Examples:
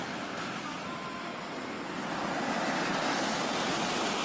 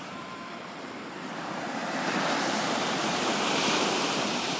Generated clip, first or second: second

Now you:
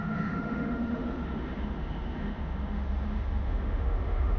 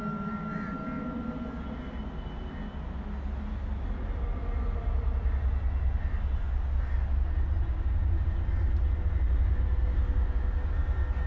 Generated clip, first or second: first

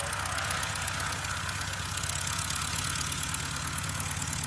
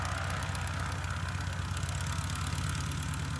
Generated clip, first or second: first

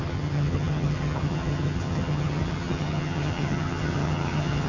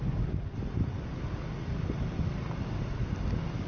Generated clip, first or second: first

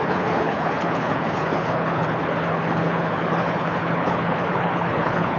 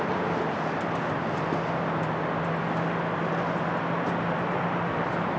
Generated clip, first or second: first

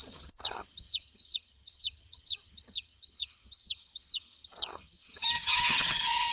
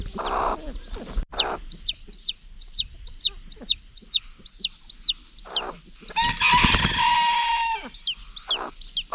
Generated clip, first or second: first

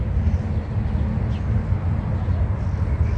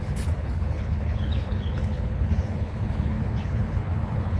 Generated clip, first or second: second